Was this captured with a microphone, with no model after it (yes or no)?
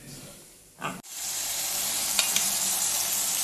no